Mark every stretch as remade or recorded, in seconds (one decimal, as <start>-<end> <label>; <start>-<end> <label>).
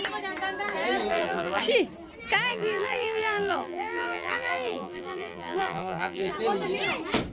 0.0-1.1 recorded; 1.1-1.6 remade; 1.6-2.5 recorded; 2.5-6.3 remade; 6.3-7.3 recorded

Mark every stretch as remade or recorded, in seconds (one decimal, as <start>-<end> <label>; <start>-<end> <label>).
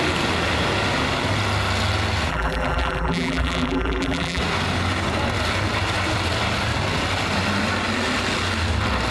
0.0-2.3 recorded; 2.3-4.4 remade; 4.4-9.1 recorded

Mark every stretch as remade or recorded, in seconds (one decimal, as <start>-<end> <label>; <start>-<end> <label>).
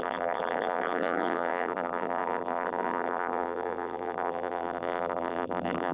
0.0-5.9 remade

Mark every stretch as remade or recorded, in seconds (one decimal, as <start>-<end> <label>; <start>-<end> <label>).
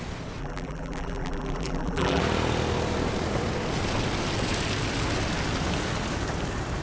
0.0-0.4 recorded; 0.4-2.2 remade; 2.2-6.8 recorded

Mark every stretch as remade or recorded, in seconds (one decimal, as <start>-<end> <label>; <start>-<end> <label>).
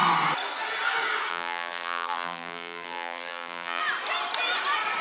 0.0-1.3 recorded; 1.3-3.8 remade; 3.8-5.0 recorded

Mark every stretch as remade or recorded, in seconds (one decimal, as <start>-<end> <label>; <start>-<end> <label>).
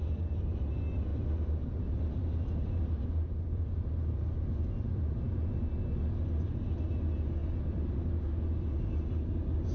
0.0-1.1 recorded; 1.1-5.6 remade; 5.6-9.7 recorded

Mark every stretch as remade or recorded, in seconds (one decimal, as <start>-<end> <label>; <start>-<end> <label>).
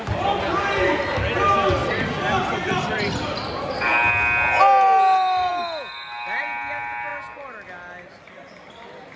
0.0-1.8 recorded; 1.8-3.7 remade; 3.7-9.2 recorded